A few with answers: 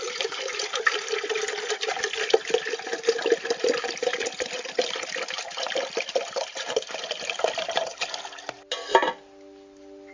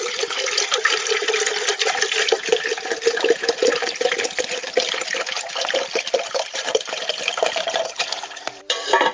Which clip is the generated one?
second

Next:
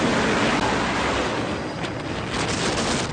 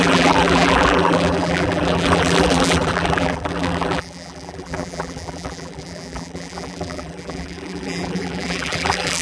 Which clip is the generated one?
second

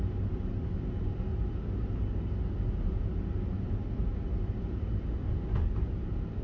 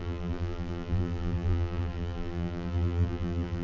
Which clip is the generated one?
second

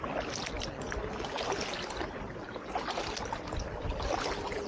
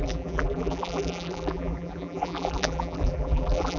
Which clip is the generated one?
second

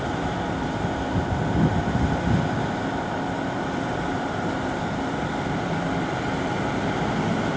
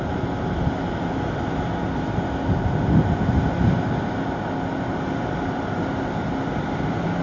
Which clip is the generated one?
first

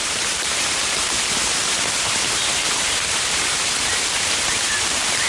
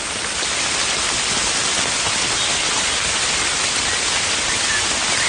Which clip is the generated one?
first